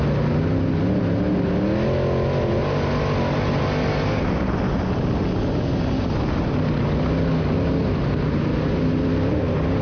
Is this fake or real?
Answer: real